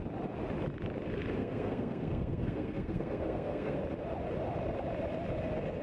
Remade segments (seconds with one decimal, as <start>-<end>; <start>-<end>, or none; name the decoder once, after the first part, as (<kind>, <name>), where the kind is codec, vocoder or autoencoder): 1.4-3.8 (codec, SNAC)